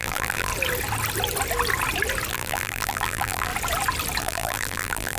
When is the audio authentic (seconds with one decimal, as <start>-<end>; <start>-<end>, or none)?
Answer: 0.5-2.3; 3.5-4.2